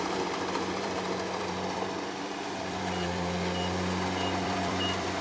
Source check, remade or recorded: remade